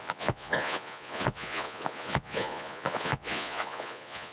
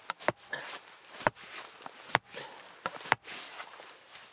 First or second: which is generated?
first